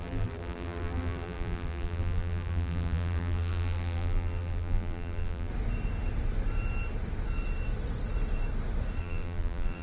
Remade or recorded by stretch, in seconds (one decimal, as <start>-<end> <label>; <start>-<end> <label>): 0.0-5.5 remade; 5.5-9.0 recorded; 9.0-9.8 remade